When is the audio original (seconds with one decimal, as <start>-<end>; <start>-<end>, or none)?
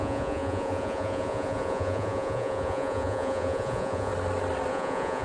4.1-4.7